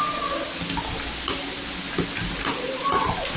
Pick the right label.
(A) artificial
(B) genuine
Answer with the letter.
B